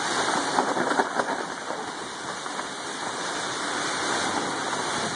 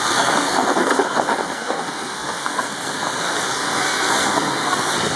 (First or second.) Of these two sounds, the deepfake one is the second